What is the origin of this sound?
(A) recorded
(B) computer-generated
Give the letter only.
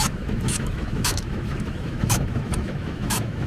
B